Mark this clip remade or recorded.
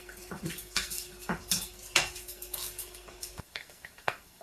remade